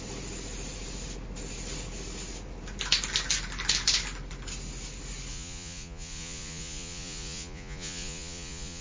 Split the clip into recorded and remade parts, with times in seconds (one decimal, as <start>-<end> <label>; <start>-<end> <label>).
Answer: 0.0-5.3 recorded; 5.3-8.8 remade